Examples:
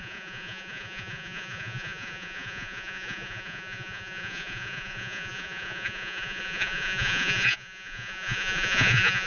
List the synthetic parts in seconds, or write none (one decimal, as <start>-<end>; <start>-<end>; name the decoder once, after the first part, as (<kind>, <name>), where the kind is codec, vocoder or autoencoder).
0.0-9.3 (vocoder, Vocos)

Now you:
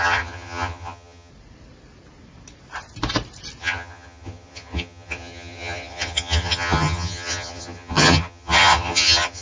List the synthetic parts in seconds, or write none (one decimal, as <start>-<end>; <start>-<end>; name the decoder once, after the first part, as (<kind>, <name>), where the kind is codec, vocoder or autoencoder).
0.0-1.3 (vocoder, HiFi-GAN); 3.6-9.4

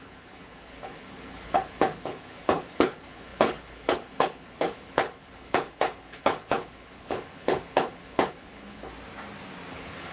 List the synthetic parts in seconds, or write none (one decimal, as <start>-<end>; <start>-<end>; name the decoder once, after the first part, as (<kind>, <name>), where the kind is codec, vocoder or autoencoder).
0.0-8.9 (codec, HILCodec); 9.7-10.1

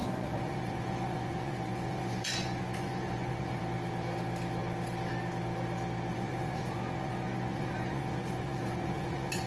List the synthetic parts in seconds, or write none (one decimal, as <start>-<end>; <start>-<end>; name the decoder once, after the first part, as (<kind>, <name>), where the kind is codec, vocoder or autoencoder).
0.0-3.6 (vocoder, Vocos); 6.1-9.5

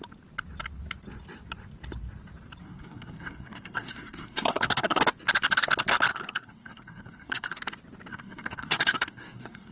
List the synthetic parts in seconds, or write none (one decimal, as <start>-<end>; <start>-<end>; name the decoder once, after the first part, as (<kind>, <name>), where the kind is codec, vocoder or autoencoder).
2.6-5.0 (codec, SNAC); 6.1-7.6; 8.1-9.7

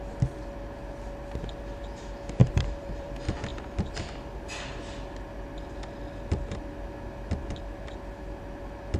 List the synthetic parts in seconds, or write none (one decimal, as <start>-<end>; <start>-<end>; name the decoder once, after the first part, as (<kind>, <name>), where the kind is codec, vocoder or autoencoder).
2.4-3.1 (vocoder, BigVGAN v2)

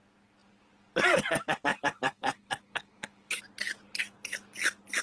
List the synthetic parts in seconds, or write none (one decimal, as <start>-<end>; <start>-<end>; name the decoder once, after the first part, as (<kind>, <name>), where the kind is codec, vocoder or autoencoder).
1.7-3.4 (codec, DAC)

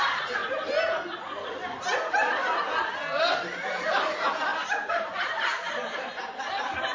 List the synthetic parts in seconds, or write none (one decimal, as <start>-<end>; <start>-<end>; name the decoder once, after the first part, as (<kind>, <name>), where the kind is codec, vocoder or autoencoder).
0.0-0.4 (vocoder, BigVGAN v2); 2.4-2.8; 3.8-6.9